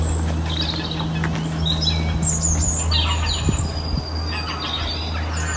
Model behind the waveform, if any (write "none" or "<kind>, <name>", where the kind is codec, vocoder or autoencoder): none